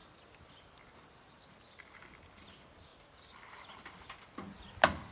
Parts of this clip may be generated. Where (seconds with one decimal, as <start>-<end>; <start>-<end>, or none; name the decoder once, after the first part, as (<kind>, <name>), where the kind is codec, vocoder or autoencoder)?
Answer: 0.0-1.6 (vocoder, BigVGAN v2); 2.9-3.4